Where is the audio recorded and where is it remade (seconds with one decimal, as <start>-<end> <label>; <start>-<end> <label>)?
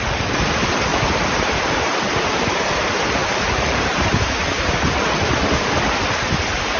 0.0-0.9 recorded; 0.9-4.6 remade; 4.6-6.8 recorded